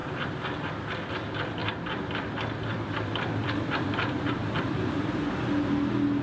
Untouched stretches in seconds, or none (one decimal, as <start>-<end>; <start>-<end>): 0.6-1.6; 5.3-6.2